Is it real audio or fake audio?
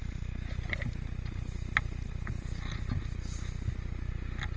real